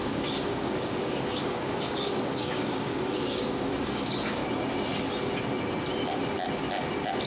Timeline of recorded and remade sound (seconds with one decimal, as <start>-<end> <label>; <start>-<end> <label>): 0.0-4.4 remade; 4.4-7.3 recorded